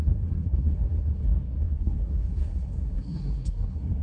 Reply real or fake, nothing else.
fake